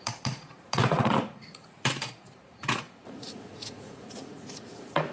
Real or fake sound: fake